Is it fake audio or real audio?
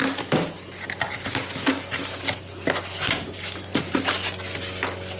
real